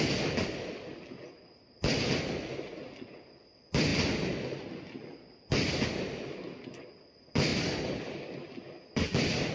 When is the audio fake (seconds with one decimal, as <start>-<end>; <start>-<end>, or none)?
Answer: none